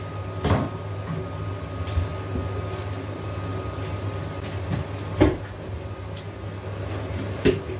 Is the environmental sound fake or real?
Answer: real